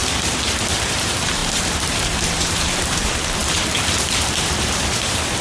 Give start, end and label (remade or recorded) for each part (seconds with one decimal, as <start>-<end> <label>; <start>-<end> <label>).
0.0-0.9 recorded; 0.9-5.4 remade